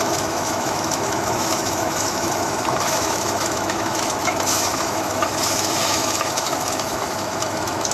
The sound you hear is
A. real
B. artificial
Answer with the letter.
B